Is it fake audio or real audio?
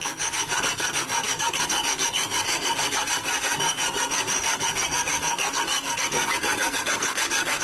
fake